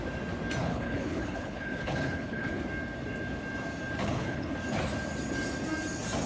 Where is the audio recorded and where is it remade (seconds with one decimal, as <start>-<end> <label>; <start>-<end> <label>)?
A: 0.0-0.6 recorded; 0.6-2.6 remade; 2.6-4.0 recorded; 4.0-4.5 remade; 4.5-6.3 recorded